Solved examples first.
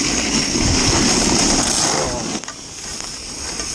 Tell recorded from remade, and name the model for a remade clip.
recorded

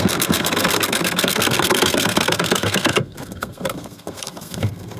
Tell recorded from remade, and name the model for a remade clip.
remade, codec, SNAC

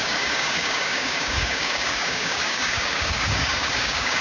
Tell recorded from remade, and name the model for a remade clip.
remade, codec, DAC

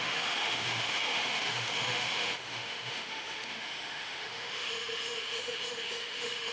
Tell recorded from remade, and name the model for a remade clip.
remade, autoencoder, DAC-VAE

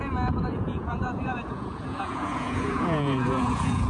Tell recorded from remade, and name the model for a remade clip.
remade, vocoder, Vocos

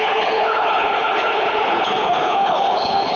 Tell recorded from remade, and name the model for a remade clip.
remade, codec, HILCodec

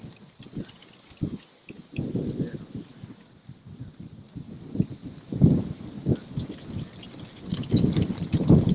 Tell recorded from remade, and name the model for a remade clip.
recorded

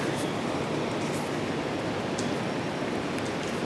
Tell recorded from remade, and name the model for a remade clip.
recorded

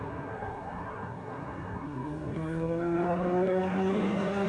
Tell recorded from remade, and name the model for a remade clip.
remade, codec, SNAC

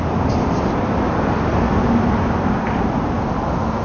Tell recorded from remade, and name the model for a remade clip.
recorded